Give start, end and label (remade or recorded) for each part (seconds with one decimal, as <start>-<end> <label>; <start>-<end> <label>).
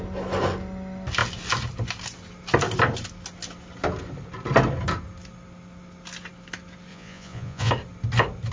0.0-6.9 recorded; 6.9-7.7 remade; 7.7-8.5 recorded